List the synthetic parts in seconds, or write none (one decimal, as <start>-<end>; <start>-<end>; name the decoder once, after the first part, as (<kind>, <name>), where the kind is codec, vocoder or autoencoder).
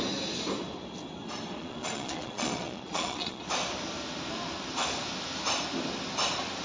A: 1.6-3.4 (vocoder, Vocos)